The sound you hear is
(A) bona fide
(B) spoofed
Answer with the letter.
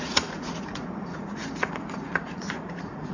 B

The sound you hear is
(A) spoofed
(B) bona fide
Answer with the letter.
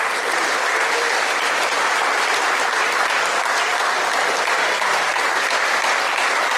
B